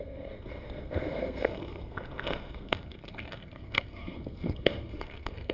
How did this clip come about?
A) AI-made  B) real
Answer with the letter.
A